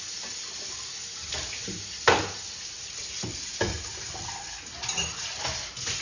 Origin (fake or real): real